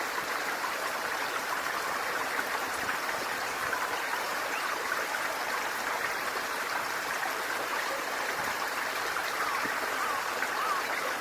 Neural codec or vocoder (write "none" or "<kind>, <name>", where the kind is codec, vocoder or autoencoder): vocoder, BigVGAN v2